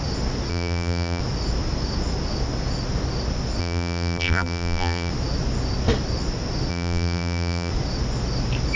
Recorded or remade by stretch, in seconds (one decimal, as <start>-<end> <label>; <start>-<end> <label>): 0.0-0.5 recorded; 0.5-1.2 remade; 1.2-3.6 recorded; 3.6-5.1 remade; 5.1-6.7 recorded; 6.7-7.7 remade; 7.7-8.8 recorded